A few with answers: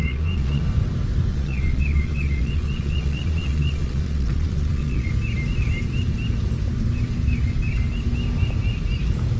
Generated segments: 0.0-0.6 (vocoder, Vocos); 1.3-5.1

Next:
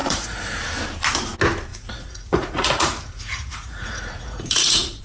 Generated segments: 0.0-0.6 (vocoder, Vocos); 1.7-5.0

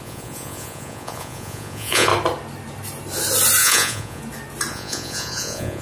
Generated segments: 0.0-2.1 (vocoder, Vocos); 3.6-4.2; 4.7-5.8

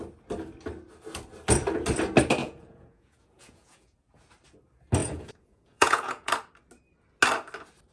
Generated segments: 2.4-4.2 (vocoder, Vocos); 5.0-6.3

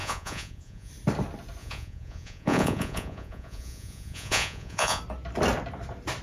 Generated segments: 0.0-0.9 (vocoder, Vocos); 1.6-5.0

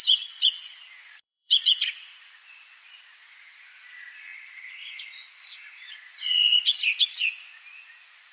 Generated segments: 0.0-8.3 (vocoder, Vocos)

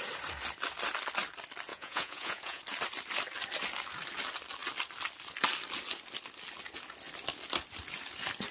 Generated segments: 1.7-2.6 (vocoder, Vocos)